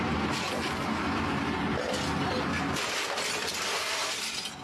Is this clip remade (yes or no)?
no